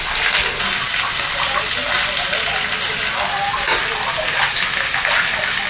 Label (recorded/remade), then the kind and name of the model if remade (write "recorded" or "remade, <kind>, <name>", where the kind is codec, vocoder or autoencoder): recorded